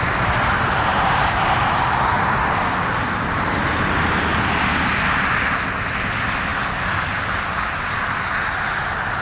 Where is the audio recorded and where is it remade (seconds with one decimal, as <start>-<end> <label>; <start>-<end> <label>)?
0.0-0.9 recorded; 0.9-3.6 remade; 3.6-9.2 recorded